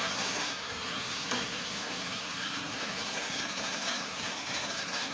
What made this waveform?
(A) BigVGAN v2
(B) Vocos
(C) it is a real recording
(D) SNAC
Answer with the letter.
D